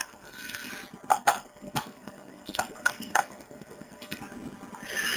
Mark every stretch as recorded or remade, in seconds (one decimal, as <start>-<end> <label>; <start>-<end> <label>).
0.0-0.7 remade; 0.7-1.1 recorded; 1.1-4.2 remade; 4.2-5.2 recorded